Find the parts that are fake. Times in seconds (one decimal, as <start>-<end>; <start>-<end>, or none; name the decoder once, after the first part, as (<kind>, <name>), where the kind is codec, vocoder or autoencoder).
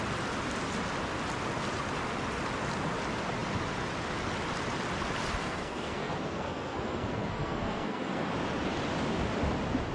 5.4-8.3 (codec, SNAC)